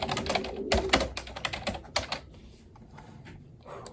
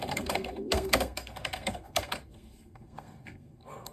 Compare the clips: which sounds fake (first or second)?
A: second